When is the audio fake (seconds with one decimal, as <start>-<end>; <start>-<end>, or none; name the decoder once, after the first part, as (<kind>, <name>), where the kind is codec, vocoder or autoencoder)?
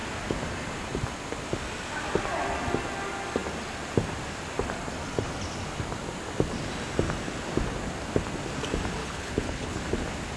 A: 9.0-9.8 (codec, HILCodec)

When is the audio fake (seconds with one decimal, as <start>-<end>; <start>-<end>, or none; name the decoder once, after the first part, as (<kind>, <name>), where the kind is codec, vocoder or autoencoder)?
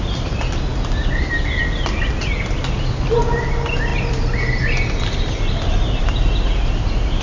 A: none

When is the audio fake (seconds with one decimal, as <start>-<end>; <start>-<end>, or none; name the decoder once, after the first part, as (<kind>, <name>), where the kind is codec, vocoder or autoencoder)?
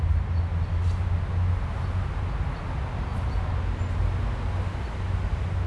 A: none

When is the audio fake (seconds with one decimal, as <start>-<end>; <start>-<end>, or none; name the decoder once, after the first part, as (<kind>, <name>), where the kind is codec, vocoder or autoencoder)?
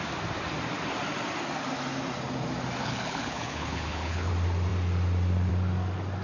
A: 2.8-4.3 (codec, HILCodec)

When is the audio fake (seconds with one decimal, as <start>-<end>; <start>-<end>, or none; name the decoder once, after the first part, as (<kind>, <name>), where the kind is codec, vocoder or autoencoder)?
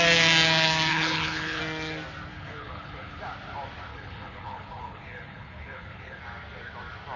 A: 0.9-1.6 (codec, HILCodec); 2.3-3.2; 3.9-6.2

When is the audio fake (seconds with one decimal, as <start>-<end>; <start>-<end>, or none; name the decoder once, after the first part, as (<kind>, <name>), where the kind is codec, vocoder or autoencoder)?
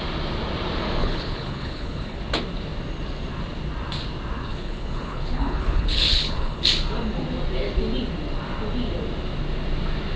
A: 1.0-2.2 (codec, HILCodec); 4.5-6.6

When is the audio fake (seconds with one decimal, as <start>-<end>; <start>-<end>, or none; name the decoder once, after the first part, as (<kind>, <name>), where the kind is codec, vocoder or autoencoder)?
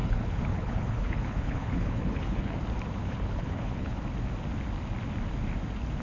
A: 0.0-2.6 (codec, HILCodec); 3.0-4.0